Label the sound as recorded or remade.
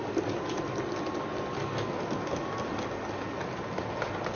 recorded